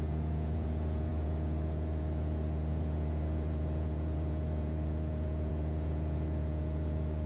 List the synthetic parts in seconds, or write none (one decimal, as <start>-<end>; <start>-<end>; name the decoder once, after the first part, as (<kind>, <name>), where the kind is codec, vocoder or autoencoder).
0.0-7.3 (vocoder, Vocos)